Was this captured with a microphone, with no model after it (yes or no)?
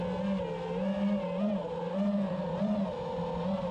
yes